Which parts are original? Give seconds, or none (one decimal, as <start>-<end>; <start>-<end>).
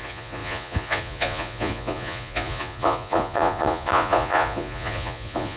none